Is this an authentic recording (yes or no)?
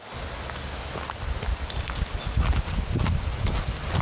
yes